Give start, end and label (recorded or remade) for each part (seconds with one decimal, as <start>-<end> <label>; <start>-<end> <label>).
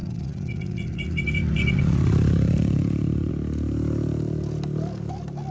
0.0-3.3 remade; 3.3-5.5 recorded